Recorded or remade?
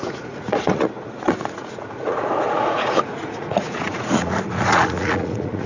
remade